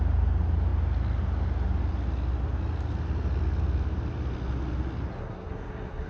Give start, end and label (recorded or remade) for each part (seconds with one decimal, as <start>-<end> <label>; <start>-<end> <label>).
0.0-5.2 recorded; 5.2-6.1 remade